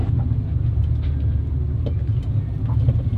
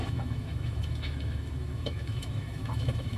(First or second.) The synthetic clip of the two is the second